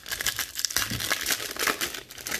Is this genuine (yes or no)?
yes